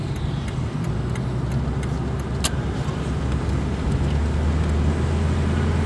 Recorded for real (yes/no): yes